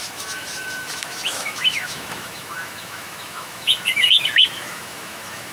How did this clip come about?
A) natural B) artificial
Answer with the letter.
B